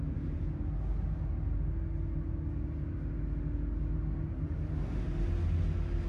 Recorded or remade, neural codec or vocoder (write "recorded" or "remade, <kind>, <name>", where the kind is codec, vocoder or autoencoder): recorded